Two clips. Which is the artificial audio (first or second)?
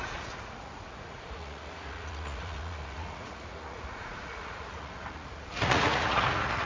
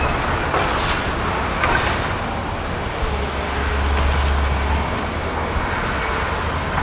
first